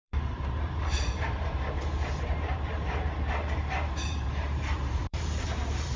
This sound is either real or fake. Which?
fake